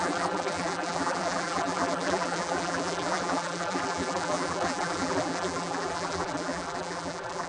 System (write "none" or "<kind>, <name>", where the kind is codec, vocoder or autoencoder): vocoder, BigVGAN v2